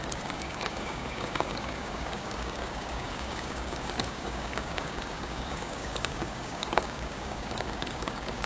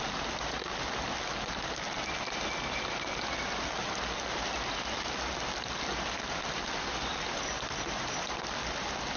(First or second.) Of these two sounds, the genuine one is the second